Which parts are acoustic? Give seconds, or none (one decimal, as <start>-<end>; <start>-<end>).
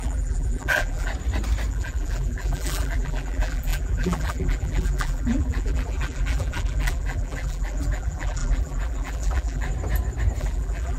1.1-1.7; 9.7-10.4